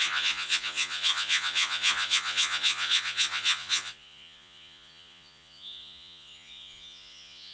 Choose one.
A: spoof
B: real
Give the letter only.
A